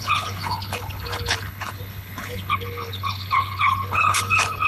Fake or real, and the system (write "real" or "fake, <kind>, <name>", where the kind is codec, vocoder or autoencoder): fake, codec, HILCodec